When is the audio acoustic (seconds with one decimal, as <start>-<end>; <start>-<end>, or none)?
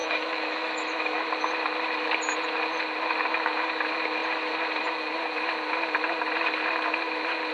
1.2-7.5